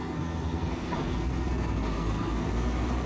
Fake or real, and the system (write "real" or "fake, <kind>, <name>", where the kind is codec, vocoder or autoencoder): fake, codec, SNAC